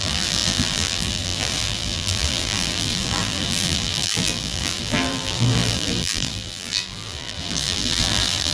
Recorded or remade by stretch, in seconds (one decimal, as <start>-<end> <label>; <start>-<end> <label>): 0.0-8.5 remade